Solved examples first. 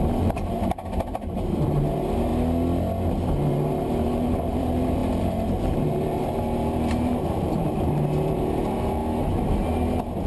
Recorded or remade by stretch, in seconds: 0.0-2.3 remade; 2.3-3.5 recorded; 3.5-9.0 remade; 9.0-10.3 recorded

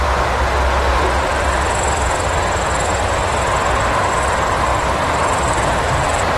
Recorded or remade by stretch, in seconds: 0.0-4.7 recorded; 4.7-6.4 remade